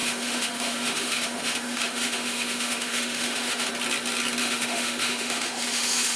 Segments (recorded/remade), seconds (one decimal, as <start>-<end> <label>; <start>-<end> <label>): 0.0-3.7 remade; 3.7-4.4 recorded; 4.4-6.2 remade